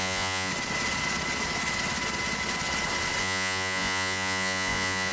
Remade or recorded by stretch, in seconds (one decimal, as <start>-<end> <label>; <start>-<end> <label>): 0.0-0.5 remade; 0.5-3.2 recorded; 3.2-5.1 remade